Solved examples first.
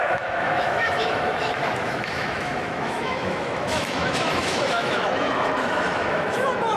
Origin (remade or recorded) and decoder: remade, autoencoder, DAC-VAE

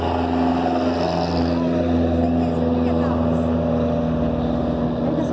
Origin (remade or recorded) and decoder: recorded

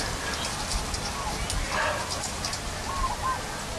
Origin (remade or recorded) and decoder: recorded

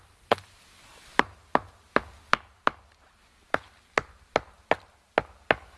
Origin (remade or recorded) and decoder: recorded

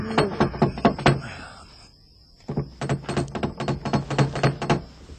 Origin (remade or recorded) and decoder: recorded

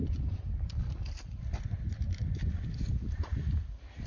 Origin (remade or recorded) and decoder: remade, vocoder, BigVGAN v2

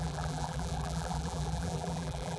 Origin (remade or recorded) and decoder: remade, vocoder, BigVGAN v2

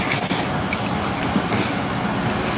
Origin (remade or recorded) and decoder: recorded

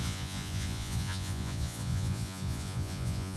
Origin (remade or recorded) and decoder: remade, vocoder, Vocos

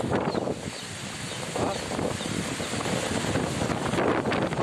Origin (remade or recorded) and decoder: recorded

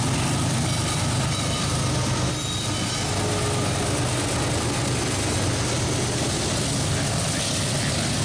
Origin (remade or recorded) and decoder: recorded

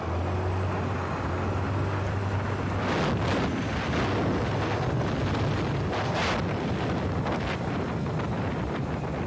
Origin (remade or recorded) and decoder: recorded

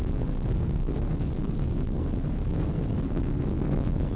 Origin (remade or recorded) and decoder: remade, codec, SNAC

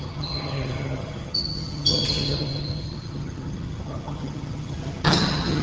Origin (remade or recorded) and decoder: remade, vocoder, HiFi-GAN